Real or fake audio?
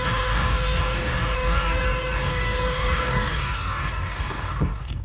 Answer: fake